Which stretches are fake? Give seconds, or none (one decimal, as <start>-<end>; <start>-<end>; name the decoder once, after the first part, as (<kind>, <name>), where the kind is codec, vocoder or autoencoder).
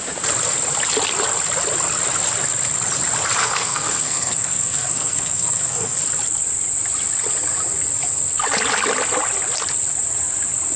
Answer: 3.4-6.0 (codec, SNAC)